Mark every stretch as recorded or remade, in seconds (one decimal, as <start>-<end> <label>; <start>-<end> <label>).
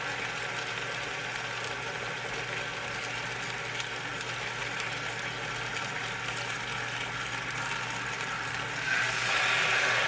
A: 0.0-10.1 recorded